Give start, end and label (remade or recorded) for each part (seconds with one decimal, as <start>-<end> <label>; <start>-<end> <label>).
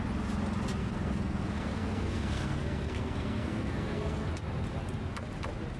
0.0-0.8 recorded; 0.8-4.3 remade; 4.3-5.8 recorded